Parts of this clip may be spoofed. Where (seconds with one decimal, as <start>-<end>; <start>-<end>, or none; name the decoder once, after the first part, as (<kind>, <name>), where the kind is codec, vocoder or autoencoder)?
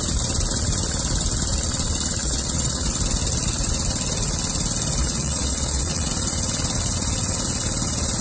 2.2-2.9 (vocoder, Vocos); 5.0-6.1